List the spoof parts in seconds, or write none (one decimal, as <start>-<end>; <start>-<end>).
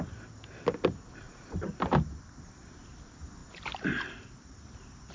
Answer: 3.4-5.1